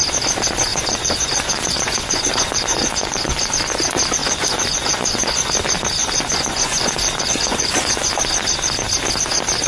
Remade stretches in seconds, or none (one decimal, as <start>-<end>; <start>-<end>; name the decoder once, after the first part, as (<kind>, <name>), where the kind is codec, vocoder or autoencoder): 0.7-3.5 (vocoder, Vocos); 4.2-5.5; 6.0-8.1